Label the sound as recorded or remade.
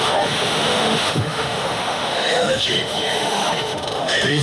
remade